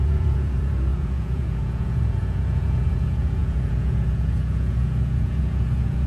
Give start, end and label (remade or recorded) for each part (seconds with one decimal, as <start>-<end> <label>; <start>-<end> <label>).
0.0-6.1 remade

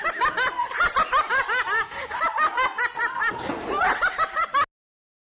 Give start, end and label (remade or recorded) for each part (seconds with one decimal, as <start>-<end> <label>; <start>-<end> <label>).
0.0-5.3 recorded

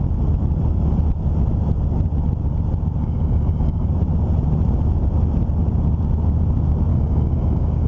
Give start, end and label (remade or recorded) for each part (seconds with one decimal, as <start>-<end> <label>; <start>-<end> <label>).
0.0-3.0 recorded; 3.0-3.9 remade; 3.9-6.9 recorded; 6.9-7.9 remade